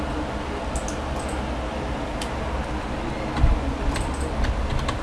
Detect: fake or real real